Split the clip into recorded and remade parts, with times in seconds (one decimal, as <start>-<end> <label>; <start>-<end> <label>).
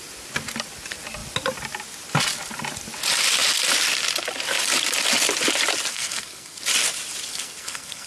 0.0-5.9 recorded; 5.9-6.6 remade; 6.6-7.3 recorded; 7.3-8.1 remade